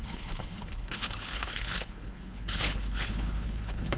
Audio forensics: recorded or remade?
remade